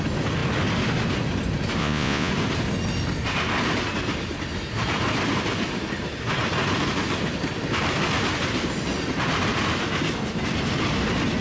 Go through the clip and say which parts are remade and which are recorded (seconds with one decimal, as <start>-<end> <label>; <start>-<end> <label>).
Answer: 0.0-1.8 recorded; 1.8-2.3 remade; 2.3-11.4 recorded